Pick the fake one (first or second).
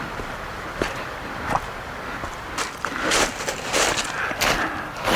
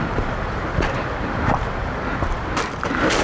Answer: first